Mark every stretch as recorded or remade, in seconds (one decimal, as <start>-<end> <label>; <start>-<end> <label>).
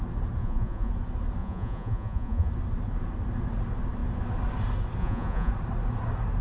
0.0-0.4 recorded; 0.4-0.9 remade; 0.9-1.4 recorded; 1.4-2.5 remade; 2.5-5.0 recorded; 5.0-5.5 remade; 5.5-6.4 recorded